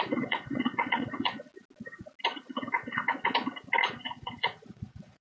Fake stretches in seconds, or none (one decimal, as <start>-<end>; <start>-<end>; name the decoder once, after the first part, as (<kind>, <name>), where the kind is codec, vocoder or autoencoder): 0.0-1.5 (vocoder, Vocos); 2.4-3.0; 3.8-5.2